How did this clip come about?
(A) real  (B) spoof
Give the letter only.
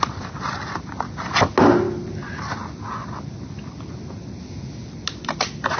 A